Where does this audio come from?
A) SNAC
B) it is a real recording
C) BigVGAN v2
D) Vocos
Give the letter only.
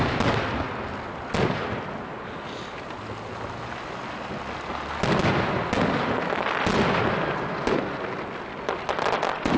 B